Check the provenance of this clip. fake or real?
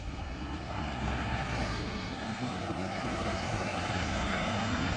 fake